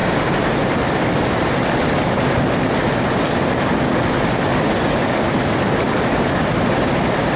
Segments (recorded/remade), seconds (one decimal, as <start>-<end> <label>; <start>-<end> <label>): 0.0-7.4 recorded